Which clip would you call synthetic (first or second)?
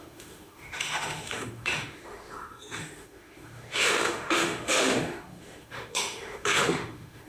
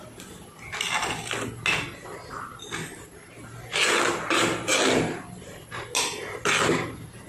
first